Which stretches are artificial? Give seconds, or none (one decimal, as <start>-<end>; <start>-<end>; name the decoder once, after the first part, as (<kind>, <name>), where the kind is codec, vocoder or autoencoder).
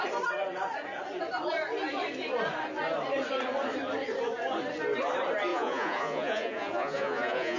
5.5-7.6 (vocoder, Vocos)